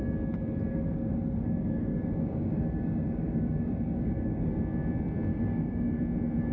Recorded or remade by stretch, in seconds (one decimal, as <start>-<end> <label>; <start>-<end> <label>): 0.0-0.7 recorded; 0.7-4.6 remade; 4.6-5.3 recorded; 5.3-6.0 remade; 6.0-6.5 recorded